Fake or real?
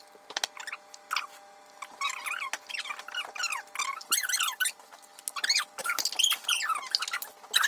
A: real